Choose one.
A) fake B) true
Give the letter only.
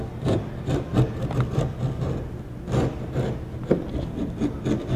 B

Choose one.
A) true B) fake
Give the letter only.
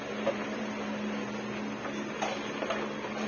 A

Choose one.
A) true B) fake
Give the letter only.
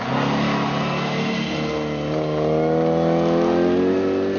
A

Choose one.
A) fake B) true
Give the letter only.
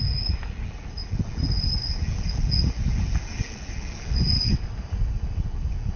B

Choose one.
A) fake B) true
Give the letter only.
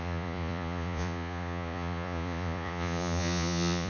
A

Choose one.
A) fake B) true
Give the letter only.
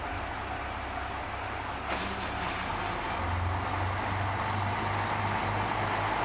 B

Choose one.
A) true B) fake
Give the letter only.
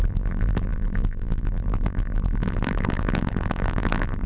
B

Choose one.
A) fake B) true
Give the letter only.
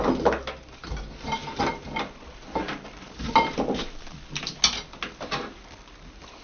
B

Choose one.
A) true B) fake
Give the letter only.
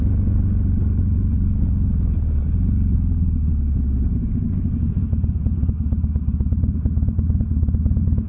A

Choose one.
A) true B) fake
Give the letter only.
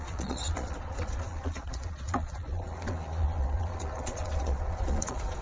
B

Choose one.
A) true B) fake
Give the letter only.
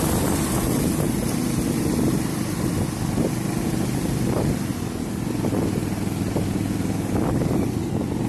A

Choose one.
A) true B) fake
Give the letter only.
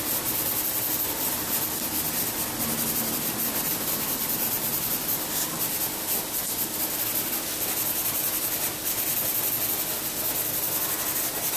A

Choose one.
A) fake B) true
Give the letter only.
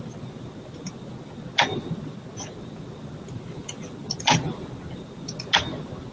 B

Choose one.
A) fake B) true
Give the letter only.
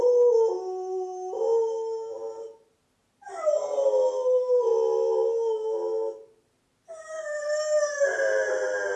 B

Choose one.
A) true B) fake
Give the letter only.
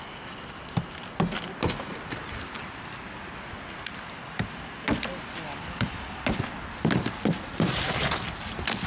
A